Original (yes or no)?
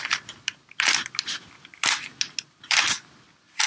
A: yes